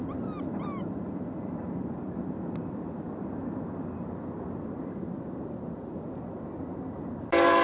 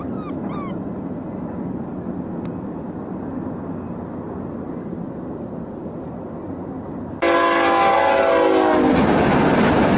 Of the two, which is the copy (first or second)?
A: first